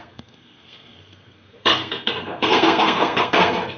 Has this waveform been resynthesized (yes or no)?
yes